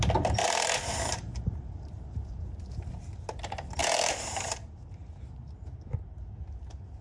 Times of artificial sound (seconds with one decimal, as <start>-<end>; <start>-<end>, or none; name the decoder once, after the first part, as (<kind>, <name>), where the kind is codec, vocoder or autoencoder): 0.4-2.9 (vocoder, BigVGAN v2); 3.8-5.3